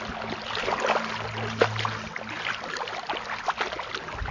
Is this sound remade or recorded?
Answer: recorded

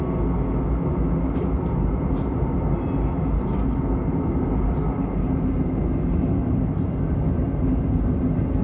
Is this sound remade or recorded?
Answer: recorded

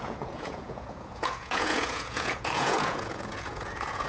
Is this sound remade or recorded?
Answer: remade